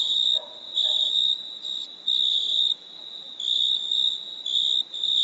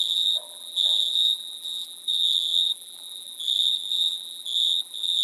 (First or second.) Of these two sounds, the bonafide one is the first